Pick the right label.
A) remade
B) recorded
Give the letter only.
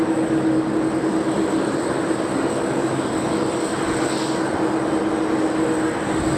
B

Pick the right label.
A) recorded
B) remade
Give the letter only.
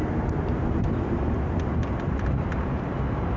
A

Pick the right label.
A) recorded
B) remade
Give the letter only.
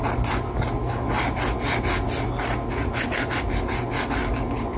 A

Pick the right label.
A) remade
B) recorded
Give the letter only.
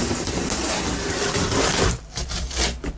B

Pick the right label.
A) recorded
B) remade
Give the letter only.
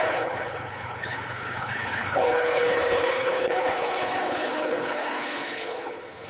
B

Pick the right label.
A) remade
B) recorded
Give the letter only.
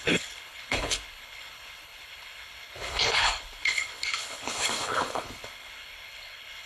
A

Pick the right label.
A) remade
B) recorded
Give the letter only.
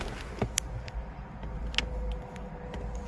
B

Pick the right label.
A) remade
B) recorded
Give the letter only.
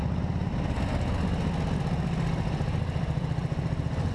B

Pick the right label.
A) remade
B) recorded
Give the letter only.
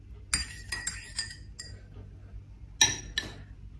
B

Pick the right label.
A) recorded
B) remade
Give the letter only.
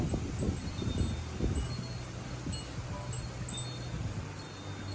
A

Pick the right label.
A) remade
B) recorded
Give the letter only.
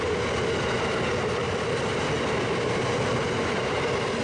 B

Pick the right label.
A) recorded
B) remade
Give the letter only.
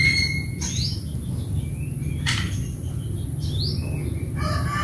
A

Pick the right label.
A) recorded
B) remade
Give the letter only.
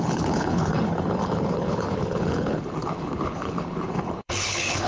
B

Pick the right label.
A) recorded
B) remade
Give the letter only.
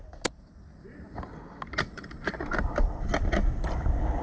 A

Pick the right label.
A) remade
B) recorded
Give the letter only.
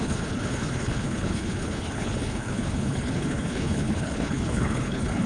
A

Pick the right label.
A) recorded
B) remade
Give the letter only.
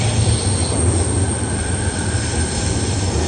A